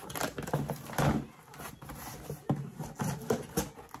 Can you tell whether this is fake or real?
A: real